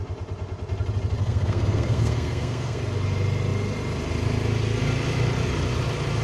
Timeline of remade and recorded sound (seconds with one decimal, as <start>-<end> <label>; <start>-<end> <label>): 0.0-1.2 recorded; 1.2-2.8 remade; 2.8-6.2 recorded